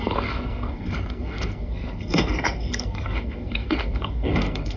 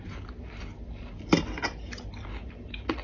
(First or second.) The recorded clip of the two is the second